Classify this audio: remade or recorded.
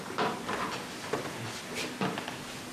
recorded